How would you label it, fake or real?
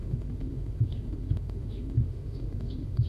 fake